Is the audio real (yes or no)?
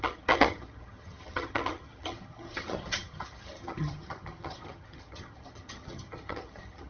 no